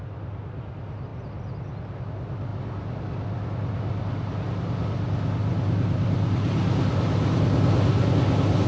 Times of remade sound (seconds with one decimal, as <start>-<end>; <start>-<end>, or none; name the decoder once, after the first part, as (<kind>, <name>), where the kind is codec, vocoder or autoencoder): none